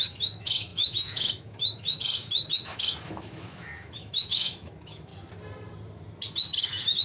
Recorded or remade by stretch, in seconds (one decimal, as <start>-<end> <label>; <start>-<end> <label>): 0.0-5.1 remade; 5.1-6.6 recorded; 6.6-7.0 remade